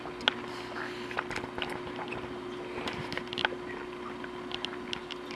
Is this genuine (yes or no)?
yes